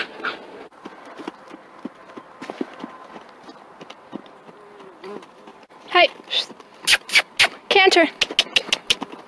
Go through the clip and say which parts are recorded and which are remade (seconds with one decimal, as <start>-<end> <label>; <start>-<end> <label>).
0.0-5.5 recorded; 5.5-6.4 remade; 6.4-9.3 recorded